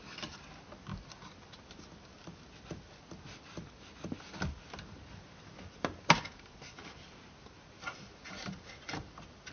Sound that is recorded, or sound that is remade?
recorded